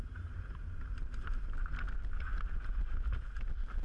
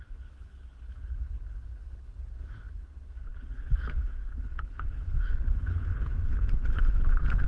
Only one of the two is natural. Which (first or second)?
first